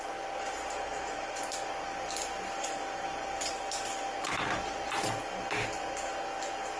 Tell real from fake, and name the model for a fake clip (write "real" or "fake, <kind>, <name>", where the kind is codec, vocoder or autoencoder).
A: real